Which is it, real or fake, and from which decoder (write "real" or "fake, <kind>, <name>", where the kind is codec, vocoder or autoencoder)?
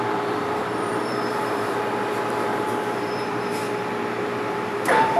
fake, vocoder, BigVGAN v2